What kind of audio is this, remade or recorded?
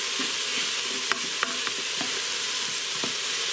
recorded